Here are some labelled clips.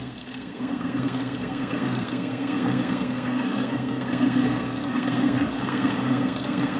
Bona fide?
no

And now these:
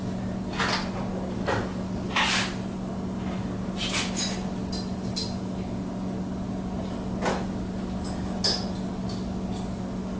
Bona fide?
yes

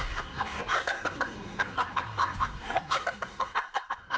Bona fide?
no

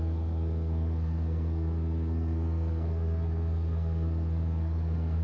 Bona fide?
no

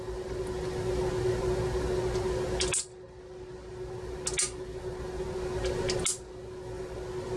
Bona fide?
yes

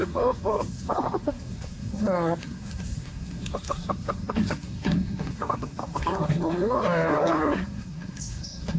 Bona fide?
no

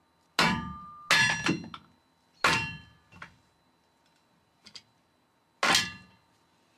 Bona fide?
yes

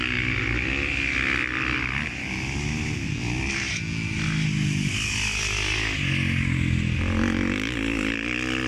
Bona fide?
yes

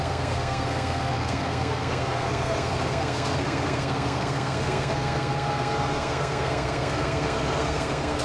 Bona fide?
no